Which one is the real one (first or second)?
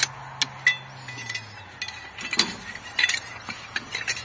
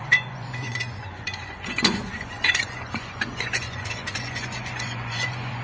first